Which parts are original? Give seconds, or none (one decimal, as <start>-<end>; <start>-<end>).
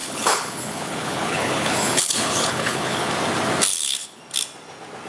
3.1-3.7; 4.2-5.1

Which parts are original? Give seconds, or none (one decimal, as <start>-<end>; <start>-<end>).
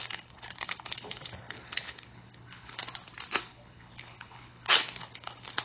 2.8-3.5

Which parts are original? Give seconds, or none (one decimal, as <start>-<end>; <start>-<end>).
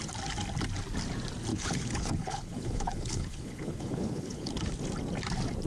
0.0-1.5; 4.5-5.7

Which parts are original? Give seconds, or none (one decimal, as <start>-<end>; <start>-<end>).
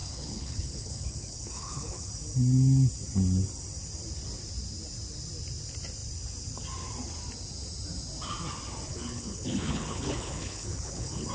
2.1-8.9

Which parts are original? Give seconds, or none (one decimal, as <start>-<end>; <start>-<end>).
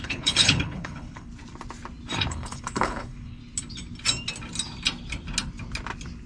1.3-2.3; 3.4-6.3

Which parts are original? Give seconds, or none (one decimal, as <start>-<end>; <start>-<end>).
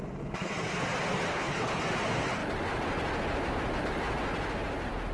0.0-1.3; 1.8-5.1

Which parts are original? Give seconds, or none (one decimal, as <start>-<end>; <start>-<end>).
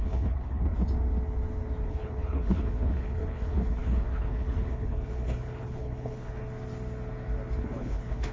0.6-1.9; 6.4-7.6